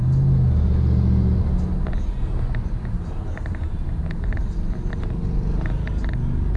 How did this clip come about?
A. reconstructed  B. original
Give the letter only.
B